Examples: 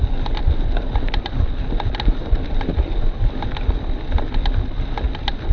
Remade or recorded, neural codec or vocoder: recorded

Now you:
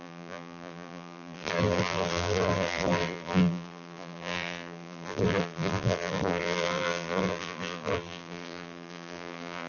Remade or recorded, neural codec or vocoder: remade, vocoder, BigVGAN v2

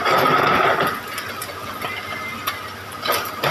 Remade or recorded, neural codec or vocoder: recorded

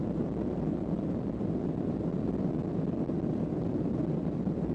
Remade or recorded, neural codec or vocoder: remade, vocoder, BigVGAN v2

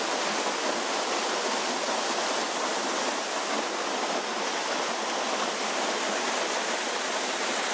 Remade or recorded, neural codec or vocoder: recorded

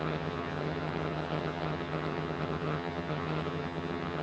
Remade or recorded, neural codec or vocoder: remade, vocoder, HiFi-GAN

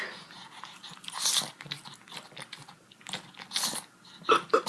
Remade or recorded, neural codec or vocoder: recorded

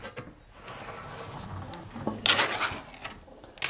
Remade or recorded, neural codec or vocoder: recorded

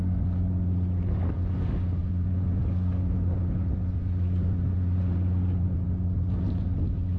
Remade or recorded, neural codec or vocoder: recorded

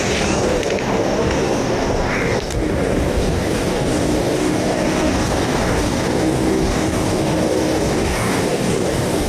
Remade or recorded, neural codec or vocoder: remade, codec, DAC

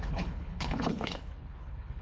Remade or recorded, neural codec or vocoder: remade, codec, HILCodec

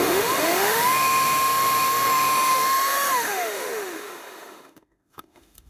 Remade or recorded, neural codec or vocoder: remade, autoencoder, DAC-VAE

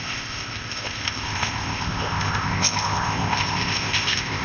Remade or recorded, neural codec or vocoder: remade, codec, ZipCodec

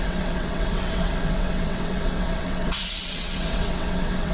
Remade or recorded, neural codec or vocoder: remade, vocoder, WaveNeXt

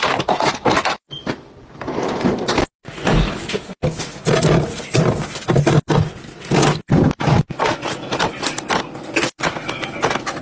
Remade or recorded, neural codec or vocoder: recorded